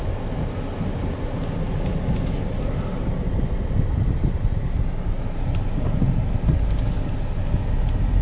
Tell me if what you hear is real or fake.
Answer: real